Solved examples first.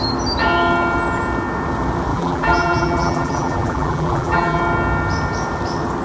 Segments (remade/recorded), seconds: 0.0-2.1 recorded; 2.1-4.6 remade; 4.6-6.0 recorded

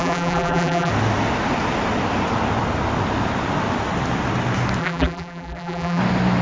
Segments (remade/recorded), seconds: 0.0-0.9 remade; 0.9-4.8 recorded; 4.8-6.0 remade; 6.0-6.4 recorded